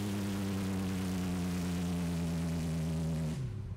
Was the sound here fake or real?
real